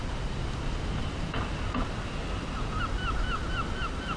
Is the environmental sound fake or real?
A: real